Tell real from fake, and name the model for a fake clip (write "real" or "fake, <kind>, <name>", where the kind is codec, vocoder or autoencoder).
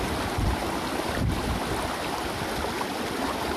fake, vocoder, BigVGAN v2